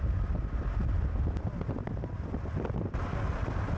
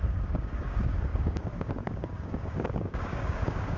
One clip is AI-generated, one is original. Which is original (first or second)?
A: first